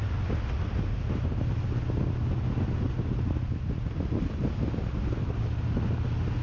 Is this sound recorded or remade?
recorded